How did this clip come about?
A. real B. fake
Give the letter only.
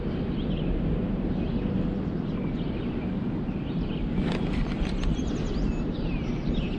A